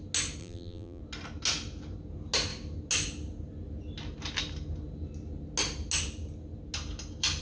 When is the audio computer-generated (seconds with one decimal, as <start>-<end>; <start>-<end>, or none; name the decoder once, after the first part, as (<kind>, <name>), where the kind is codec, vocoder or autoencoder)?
0.4-1.0 (vocoder, BigVGAN v2)